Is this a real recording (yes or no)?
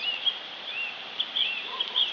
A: no